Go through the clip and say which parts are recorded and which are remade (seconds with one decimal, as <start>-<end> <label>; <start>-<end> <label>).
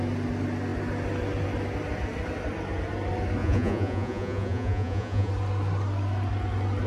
0.0-3.4 recorded; 3.4-5.3 remade; 5.3-6.9 recorded